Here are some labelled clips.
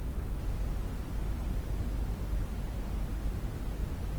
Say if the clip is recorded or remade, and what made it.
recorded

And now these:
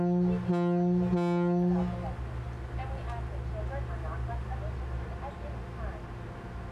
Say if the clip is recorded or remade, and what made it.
recorded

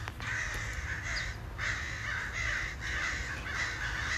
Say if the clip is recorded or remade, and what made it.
recorded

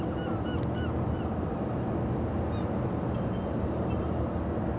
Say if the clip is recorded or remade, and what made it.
recorded